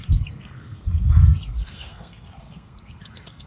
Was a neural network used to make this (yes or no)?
yes